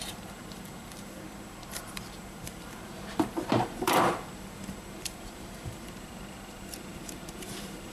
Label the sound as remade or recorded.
remade